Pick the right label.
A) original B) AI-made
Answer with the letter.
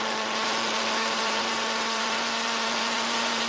B